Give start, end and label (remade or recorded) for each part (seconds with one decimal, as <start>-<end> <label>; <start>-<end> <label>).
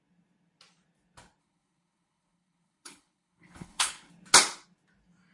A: 0.0-1.4 recorded; 1.4-4.1 remade; 4.1-5.3 recorded